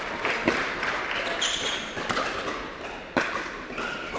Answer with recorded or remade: recorded